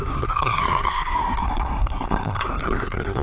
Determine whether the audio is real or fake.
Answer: fake